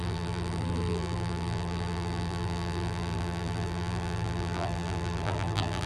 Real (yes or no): no